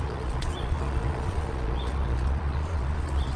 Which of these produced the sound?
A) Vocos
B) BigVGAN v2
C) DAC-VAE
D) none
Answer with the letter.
A